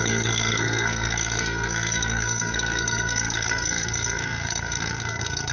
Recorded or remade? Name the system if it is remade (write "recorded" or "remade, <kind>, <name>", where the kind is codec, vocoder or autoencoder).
remade, codec, SNAC